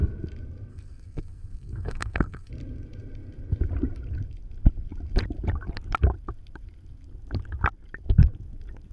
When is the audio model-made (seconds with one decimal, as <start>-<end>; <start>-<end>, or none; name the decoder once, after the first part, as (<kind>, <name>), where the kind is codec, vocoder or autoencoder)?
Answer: 0.7-2.5 (codec, SNAC)